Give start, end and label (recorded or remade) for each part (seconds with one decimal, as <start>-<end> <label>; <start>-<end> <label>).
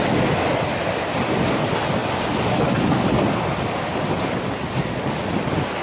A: 0.0-5.8 recorded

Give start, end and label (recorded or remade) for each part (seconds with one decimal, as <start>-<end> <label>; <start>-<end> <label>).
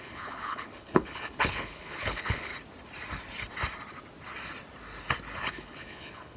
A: 0.0-2.5 remade; 2.5-5.5 recorded; 5.5-6.4 remade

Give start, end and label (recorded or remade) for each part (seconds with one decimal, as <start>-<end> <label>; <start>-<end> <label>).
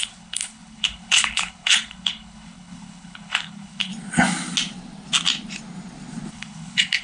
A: 0.0-3.9 remade; 3.9-6.3 recorded; 6.3-7.0 remade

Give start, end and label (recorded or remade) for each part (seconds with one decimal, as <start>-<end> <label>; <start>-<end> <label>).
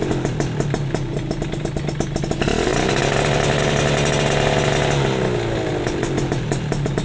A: 0.0-7.0 recorded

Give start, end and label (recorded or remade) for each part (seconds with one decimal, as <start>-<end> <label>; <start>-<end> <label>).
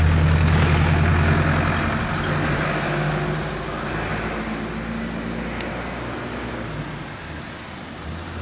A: 0.0-8.4 recorded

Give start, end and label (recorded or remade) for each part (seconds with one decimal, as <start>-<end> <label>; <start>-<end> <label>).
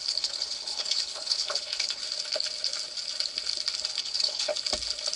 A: 0.0-2.0 remade; 2.0-4.0 recorded; 4.0-4.5 remade; 4.5-5.2 recorded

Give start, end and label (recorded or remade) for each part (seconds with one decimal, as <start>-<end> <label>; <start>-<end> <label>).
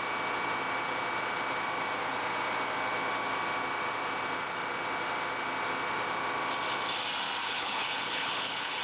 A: 0.0-7.4 recorded; 7.4-8.8 remade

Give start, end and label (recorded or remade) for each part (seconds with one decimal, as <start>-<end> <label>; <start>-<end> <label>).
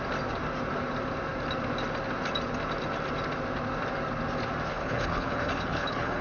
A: 0.0-4.7 recorded; 4.7-6.2 remade